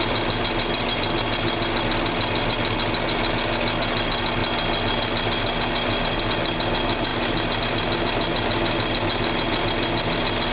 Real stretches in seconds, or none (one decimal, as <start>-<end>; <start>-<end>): 0.0-10.5